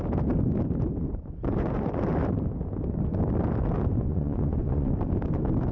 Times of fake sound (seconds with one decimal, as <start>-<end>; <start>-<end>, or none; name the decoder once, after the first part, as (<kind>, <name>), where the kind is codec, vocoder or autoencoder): 1.0-1.9 (vocoder, Vocos); 3.9-4.9